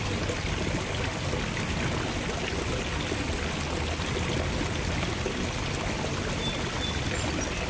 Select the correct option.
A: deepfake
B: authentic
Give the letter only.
B